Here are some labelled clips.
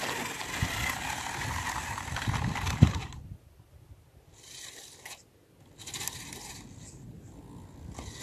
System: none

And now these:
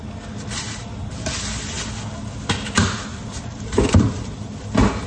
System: none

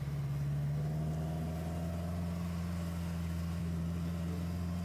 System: none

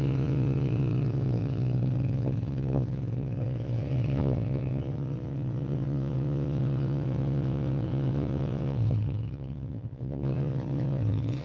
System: vocoder, WaveNeXt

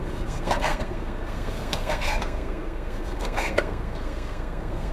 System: codec, SNAC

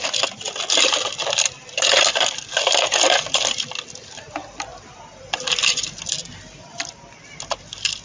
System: none